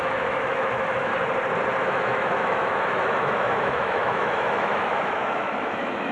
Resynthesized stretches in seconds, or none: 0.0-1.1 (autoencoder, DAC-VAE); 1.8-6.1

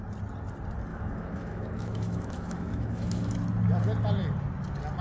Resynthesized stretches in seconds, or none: 0.9-3.3 (autoencoder, DAC-VAE)

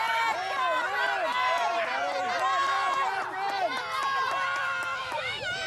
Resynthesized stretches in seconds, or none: 5.0-5.7 (autoencoder, DAC-VAE)

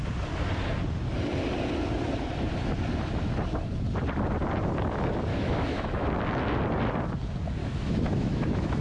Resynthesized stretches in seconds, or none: 5.3-6.1 (autoencoder, DAC-VAE); 7.6-8.8

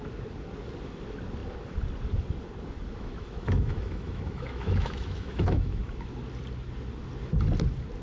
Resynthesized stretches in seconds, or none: 2.9-5.8 (autoencoder, DAC-VAE)

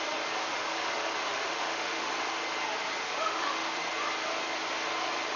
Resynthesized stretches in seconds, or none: 0.5-2.1 (autoencoder, DAC-VAE); 3.0-3.9

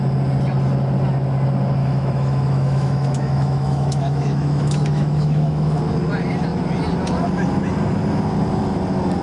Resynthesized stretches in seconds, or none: 1.8-5.8 (autoencoder, DAC-VAE)